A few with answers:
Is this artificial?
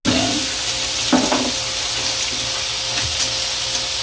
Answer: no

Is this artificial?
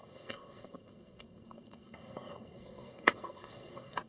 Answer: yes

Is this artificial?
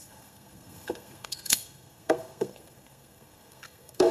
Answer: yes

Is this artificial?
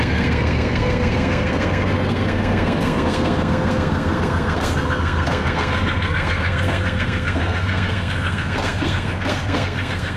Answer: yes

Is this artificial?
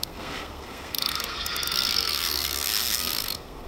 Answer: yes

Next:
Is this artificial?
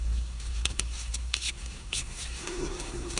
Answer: yes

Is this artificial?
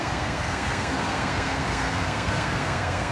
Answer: yes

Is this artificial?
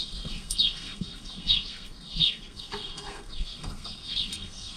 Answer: yes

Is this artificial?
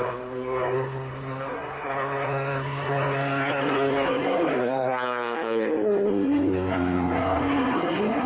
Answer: yes